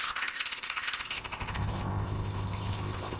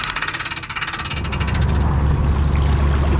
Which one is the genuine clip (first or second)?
second